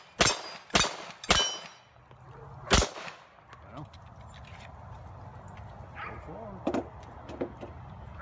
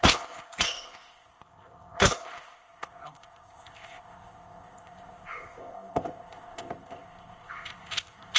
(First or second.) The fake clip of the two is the second